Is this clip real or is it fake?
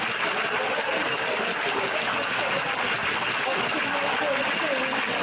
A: real